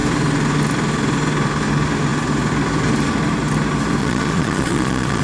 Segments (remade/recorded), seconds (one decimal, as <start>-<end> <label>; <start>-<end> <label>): 0.0-4.0 recorded; 4.0-5.2 remade